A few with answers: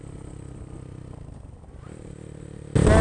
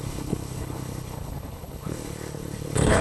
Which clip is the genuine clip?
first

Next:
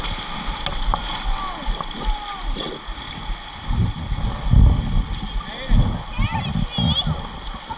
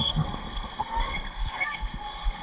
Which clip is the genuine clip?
first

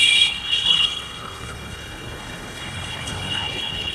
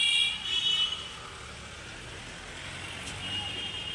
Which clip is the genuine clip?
second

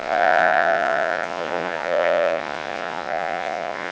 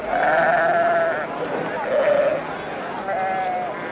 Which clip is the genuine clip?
second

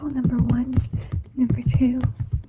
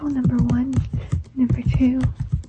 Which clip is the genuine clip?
second